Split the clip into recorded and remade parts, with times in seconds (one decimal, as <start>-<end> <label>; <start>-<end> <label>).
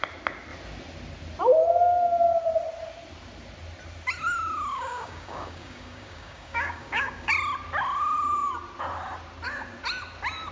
0.0-4.7 recorded; 4.7-7.3 remade; 7.3-10.5 recorded